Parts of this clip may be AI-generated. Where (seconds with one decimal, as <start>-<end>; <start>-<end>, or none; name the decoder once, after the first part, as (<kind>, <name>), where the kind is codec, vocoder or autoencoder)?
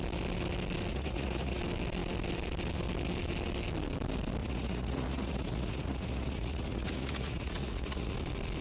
0.9-1.6 (vocoder, Vocos); 4.4-8.1